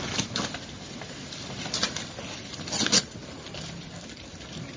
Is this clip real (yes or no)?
yes